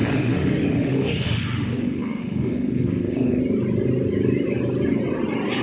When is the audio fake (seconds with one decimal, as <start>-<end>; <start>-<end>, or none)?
0.0-3.4